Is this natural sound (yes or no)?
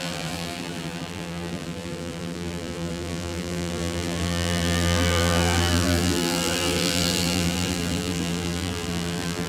no